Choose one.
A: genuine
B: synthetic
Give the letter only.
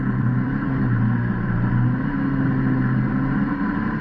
B